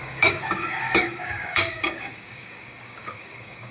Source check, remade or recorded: remade